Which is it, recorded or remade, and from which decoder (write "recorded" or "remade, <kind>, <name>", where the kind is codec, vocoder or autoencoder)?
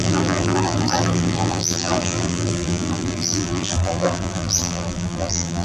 remade, vocoder, BigVGAN v2